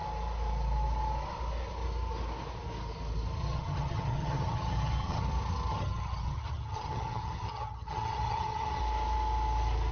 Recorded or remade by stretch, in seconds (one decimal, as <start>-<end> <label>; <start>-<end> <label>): 0.0-3.4 recorded; 3.4-5.2 remade; 5.2-5.7 recorded; 5.7-8.8 remade; 8.8-9.9 recorded

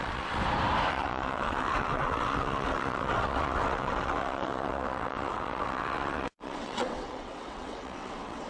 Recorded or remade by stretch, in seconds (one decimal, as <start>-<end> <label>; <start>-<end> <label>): 0.0-0.4 remade; 0.4-0.9 recorded; 0.9-8.5 remade

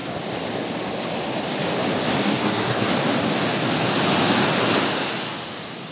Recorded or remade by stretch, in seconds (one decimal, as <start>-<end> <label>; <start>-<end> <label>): 0.0-2.2 recorded; 2.2-2.9 remade; 2.9-5.9 recorded